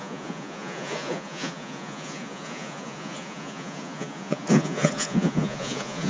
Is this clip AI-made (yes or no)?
yes